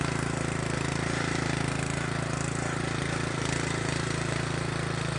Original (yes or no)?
no